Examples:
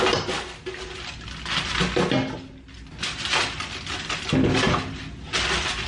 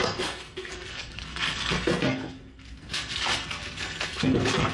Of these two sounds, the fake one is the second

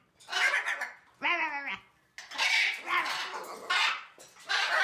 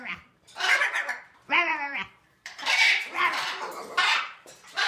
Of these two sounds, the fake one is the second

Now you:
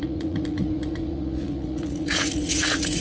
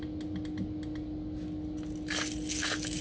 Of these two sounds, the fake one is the first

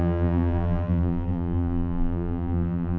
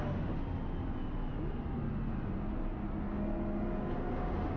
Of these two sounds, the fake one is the first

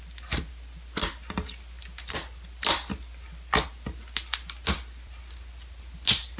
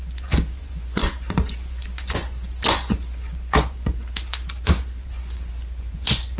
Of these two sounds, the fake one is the second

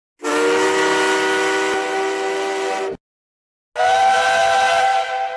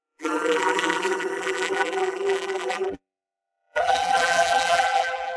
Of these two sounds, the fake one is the second